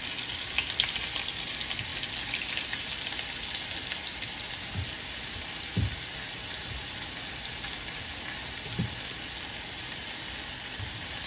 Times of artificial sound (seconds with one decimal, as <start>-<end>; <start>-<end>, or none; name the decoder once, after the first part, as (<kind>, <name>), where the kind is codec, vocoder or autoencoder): none